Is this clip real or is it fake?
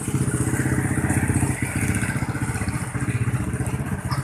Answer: real